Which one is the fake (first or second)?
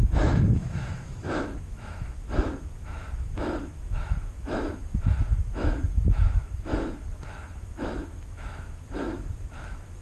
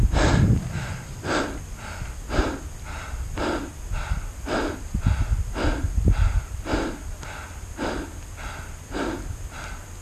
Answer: first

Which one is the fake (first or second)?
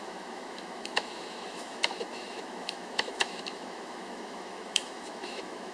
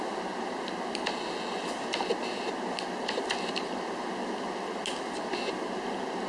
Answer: first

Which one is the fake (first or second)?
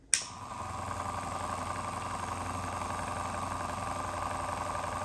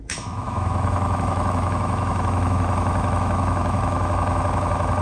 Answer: second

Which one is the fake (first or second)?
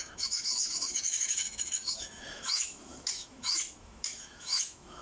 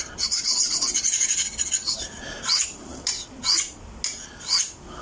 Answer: first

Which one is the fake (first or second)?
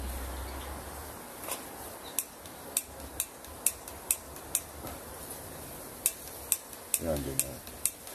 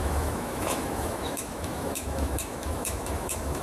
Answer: second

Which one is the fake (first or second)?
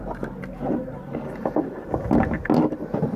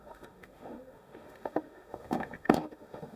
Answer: second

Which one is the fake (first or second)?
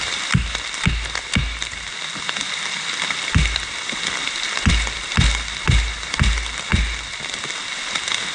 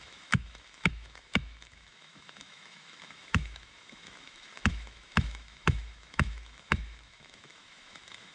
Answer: second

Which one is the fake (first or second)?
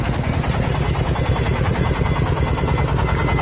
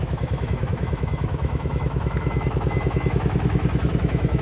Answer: second